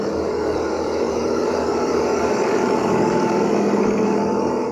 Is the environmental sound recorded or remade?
remade